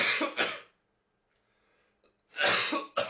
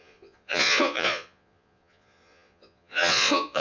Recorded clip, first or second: first